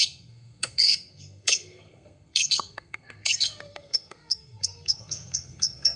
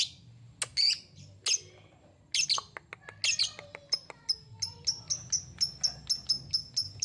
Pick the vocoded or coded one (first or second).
first